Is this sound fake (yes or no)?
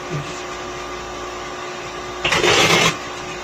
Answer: no